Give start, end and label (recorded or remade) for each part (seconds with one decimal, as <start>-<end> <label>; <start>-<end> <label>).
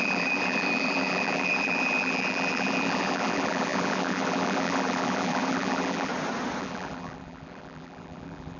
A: 0.0-6.1 remade; 6.1-6.6 recorded; 6.6-8.6 remade